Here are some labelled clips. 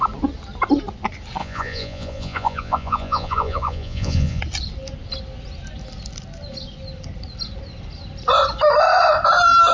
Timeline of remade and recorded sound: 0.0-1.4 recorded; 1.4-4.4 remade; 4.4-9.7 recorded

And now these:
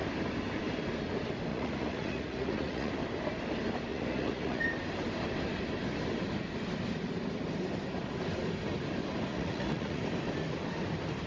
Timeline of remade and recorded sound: 0.0-1.5 recorded; 1.5-2.9 remade; 2.9-3.9 recorded; 3.9-4.6 remade; 4.6-9.3 recorded; 9.3-10.0 remade; 10.0-11.3 recorded

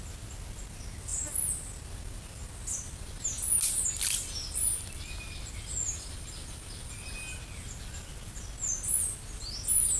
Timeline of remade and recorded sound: 0.0-10.0 recorded

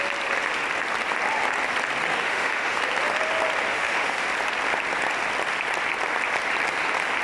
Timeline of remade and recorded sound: 0.0-2.1 recorded; 2.1-2.8 remade; 2.8-3.7 recorded; 3.7-4.2 remade; 4.2-7.2 recorded